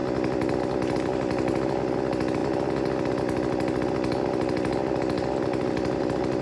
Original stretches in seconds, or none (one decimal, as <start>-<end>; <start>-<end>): 0.0-6.4